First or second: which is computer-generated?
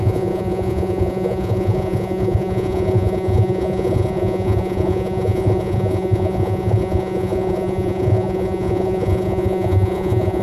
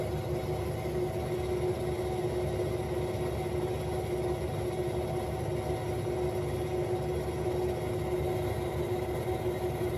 first